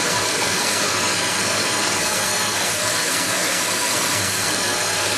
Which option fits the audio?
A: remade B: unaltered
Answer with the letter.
A